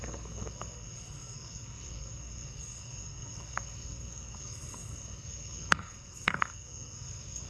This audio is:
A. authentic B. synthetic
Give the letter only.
B